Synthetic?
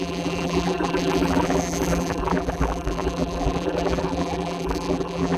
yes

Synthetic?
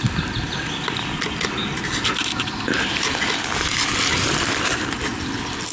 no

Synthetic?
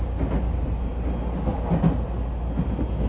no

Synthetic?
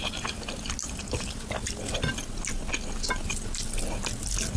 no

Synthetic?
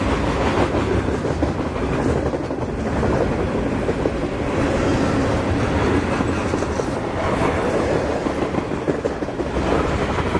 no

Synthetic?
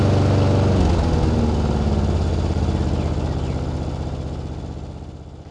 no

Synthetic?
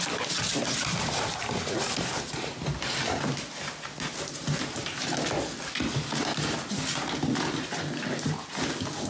no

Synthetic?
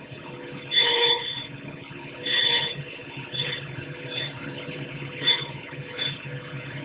yes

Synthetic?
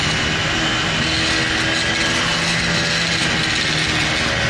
no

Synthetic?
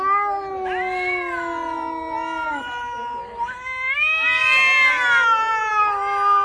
no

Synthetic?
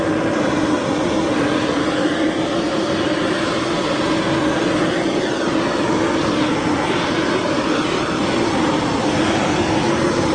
no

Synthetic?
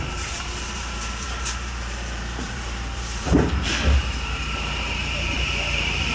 yes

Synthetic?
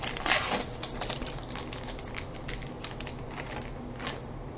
no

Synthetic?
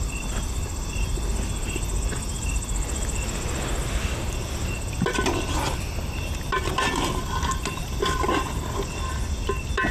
no